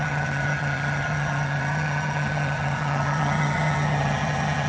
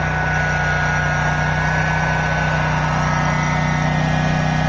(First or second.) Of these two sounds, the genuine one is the second